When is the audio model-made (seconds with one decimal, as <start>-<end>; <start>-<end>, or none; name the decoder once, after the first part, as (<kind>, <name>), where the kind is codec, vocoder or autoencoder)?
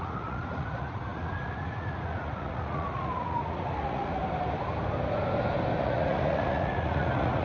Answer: 0.0-4.2 (vocoder, Vocos); 5.8-7.4